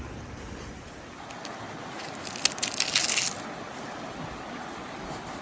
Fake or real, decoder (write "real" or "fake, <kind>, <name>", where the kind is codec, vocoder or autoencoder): real